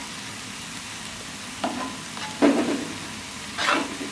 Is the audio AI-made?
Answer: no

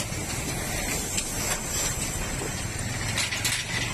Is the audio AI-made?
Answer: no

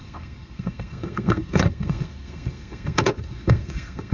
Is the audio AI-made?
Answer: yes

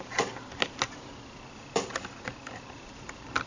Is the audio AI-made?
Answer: no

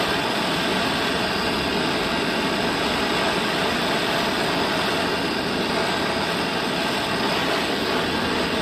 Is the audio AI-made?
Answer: no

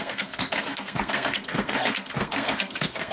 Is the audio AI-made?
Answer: yes